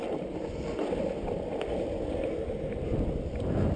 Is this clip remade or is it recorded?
recorded